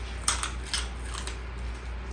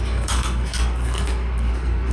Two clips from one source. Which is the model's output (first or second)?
second